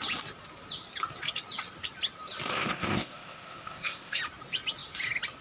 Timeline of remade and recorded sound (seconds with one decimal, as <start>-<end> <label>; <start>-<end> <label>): 0.0-2.5 recorded; 2.5-4.2 remade; 4.2-5.4 recorded

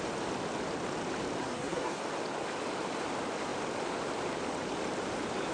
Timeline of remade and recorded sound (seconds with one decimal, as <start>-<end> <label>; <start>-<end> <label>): 0.0-1.4 recorded; 1.4-2.0 remade; 2.0-5.5 recorded

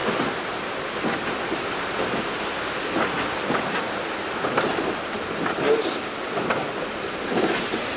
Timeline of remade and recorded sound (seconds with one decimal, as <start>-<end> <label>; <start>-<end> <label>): 0.0-8.0 recorded

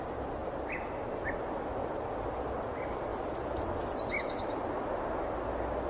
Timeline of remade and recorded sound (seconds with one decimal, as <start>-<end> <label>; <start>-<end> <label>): 0.0-5.9 recorded

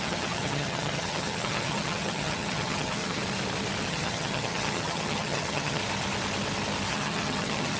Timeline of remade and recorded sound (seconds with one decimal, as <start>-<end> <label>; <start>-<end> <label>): 0.0-3.2 remade; 3.2-3.9 recorded; 3.9-5.8 remade; 5.8-6.9 recorded; 6.9-7.8 remade

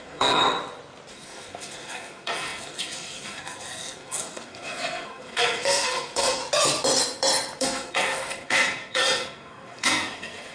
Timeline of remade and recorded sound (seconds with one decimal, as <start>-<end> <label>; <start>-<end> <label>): 0.0-0.4 remade; 0.4-1.1 recorded; 1.1-6.4 remade; 6.4-7.6 recorded; 7.6-10.5 remade

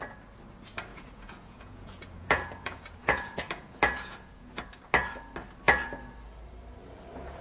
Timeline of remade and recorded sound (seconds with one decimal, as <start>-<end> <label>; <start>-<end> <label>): 0.0-0.9 recorded; 0.9-4.6 remade; 4.6-7.4 recorded

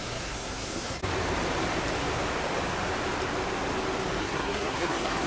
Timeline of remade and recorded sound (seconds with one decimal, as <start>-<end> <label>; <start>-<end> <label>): 0.0-1.0 remade; 1.0-4.2 recorded; 4.2-5.3 remade